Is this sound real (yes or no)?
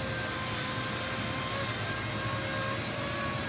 yes